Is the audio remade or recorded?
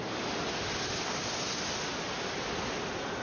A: recorded